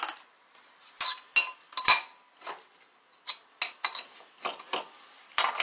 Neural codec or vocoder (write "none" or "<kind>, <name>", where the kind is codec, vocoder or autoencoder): none